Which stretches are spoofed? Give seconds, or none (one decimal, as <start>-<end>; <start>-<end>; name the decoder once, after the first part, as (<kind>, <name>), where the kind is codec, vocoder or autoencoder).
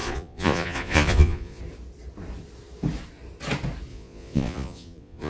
0.0-1.6 (vocoder, Vocos); 3.9-5.3